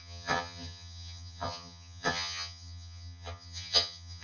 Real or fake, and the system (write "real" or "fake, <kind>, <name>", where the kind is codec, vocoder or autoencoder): fake, vocoder, HiFi-GAN